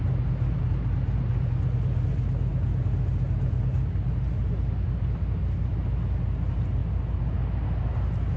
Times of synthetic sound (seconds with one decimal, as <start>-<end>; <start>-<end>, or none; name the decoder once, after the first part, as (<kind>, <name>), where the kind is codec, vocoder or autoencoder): none